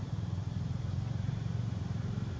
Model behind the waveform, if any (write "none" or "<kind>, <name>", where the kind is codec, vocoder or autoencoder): vocoder, BigVGAN v2